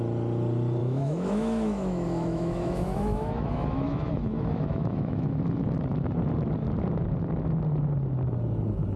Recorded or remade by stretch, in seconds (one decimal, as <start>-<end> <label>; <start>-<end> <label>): 0.0-0.8 recorded; 0.8-5.4 remade; 5.4-9.0 recorded